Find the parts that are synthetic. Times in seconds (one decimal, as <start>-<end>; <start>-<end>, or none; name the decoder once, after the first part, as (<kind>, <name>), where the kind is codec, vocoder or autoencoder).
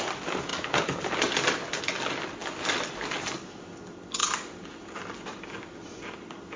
none